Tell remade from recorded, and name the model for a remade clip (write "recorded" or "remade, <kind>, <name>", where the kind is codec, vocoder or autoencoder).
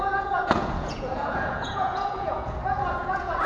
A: remade, vocoder, Vocos